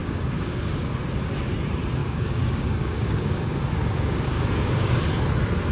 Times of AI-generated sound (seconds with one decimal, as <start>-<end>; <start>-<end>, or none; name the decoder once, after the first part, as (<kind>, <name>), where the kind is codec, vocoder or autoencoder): 0.0-0.9 (codec, DAC); 2.0-5.0